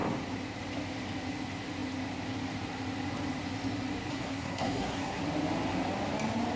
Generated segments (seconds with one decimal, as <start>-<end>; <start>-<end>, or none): 4.1-5.2